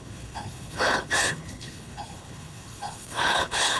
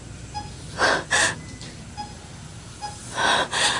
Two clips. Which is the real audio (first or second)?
second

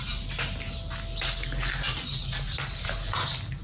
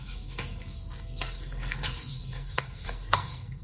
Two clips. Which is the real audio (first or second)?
first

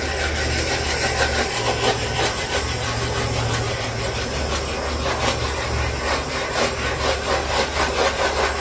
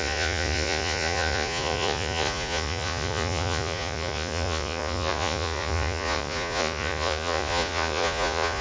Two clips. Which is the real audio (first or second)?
first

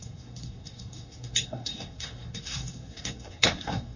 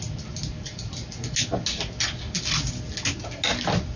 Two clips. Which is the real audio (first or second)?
second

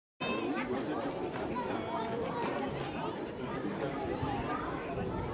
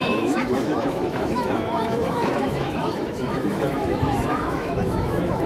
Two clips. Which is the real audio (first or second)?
first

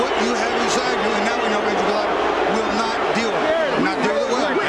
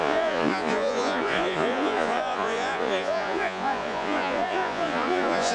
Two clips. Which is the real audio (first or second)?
first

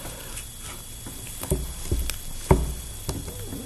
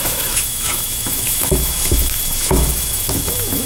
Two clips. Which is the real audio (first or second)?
first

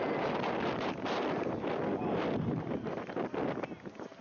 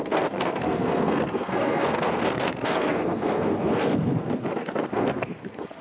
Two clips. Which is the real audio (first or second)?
first